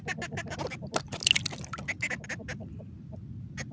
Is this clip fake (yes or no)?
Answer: no